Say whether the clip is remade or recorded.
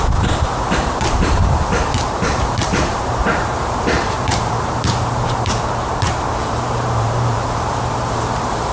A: remade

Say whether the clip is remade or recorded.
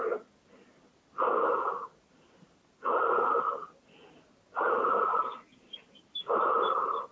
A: recorded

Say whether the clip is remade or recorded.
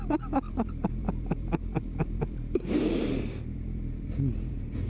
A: remade